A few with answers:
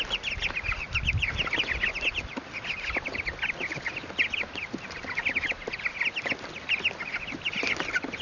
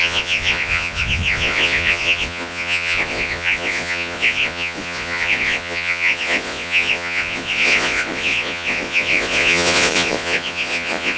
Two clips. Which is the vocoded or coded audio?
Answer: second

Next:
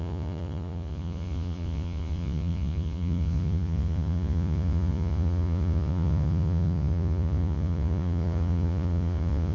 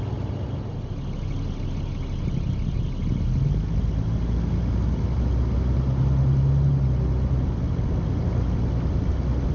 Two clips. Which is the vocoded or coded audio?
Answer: first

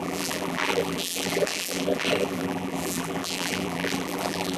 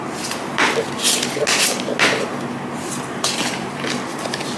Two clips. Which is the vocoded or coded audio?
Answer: first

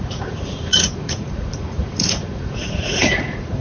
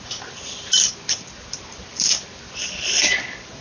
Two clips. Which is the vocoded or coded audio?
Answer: first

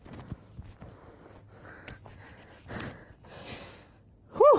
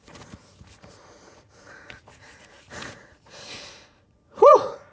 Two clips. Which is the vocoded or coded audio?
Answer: second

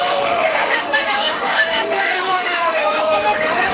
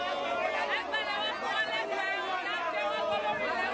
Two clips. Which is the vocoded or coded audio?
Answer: first